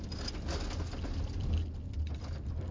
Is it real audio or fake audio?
real